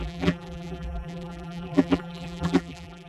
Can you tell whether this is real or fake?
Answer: fake